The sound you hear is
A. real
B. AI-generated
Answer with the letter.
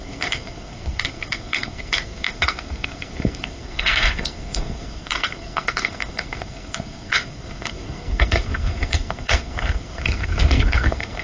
B